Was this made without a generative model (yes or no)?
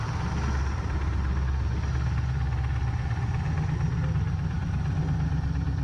yes